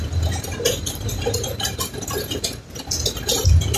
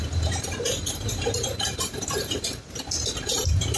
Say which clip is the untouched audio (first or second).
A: first